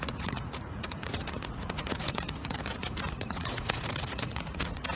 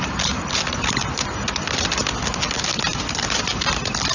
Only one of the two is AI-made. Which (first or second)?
first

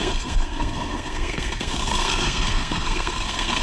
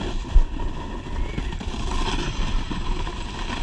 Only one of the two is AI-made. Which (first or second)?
first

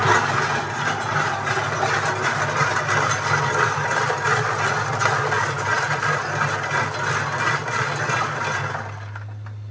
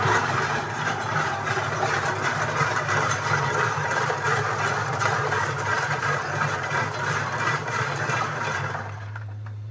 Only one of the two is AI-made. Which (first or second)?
second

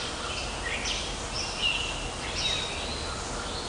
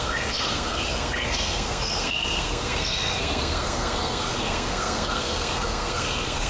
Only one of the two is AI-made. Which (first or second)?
second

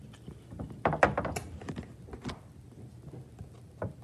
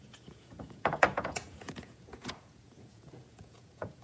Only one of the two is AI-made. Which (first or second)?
second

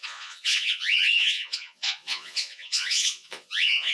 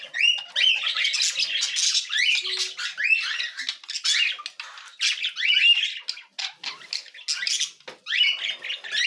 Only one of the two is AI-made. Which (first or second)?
first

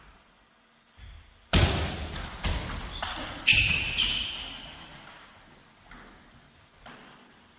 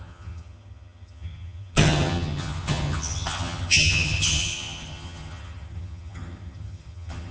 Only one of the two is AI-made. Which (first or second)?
second